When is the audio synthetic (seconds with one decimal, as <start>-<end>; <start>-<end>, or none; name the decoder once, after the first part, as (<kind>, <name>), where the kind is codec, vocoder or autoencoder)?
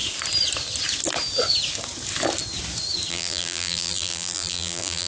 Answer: 3.1-5.1 (vocoder, BigVGAN v2)